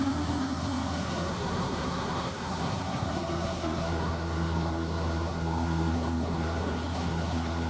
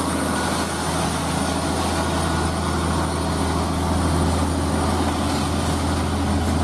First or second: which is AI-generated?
first